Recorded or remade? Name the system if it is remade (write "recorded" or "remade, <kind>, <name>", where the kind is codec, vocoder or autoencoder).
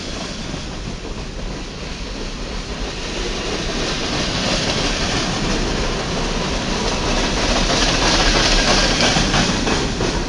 recorded